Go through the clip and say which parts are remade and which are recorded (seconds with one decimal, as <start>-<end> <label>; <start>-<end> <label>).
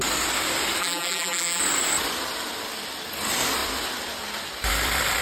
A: 0.0-0.8 recorded; 0.8-1.6 remade; 1.6-5.2 recorded